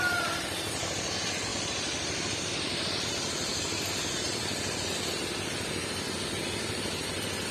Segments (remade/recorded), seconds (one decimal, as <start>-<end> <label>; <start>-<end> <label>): 0.0-1.5 recorded; 1.5-3.1 remade; 3.1-7.5 recorded